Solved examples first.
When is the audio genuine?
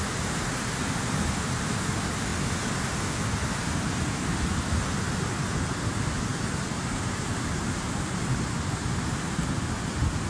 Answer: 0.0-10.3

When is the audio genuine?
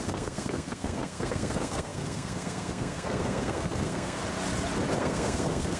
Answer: 4.2-5.0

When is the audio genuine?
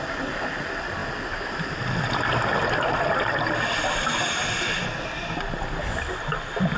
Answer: 0.0-6.8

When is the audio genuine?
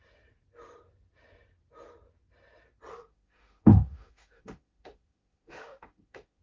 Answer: 0.0-2.9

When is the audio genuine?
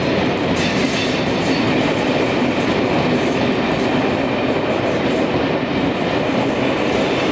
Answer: 0.0-1.0; 4.6-7.3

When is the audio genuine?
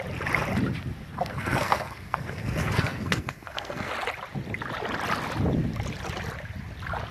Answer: 0.0-1.1; 3.9-7.1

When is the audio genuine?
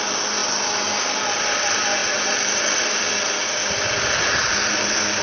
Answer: 0.0-5.2